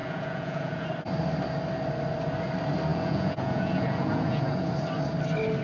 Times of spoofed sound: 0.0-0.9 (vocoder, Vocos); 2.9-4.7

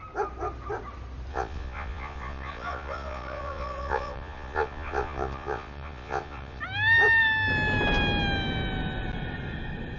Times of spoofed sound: 1.3-6.6 (vocoder, Vocos)

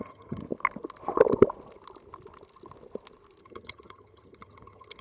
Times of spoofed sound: 0.0-0.4 (vocoder, HiFi-GAN); 3.4-5.0

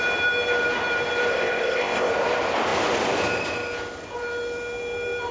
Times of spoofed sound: 1.3-2.1 (codec, ZipCodec)

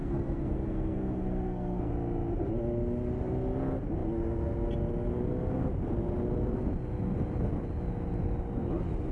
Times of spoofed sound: 0.0-1.9 (codec, SNAC)

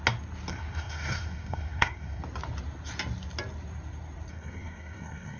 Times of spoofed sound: 0.5-2.2 (codec, SNAC); 4.3-5.4

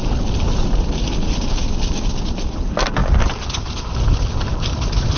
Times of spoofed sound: none